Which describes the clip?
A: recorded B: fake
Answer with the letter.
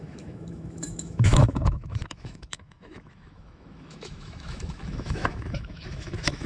B